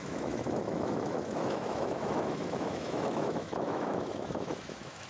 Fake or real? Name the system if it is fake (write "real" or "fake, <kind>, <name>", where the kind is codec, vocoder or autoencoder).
fake, autoencoder, DAC-VAE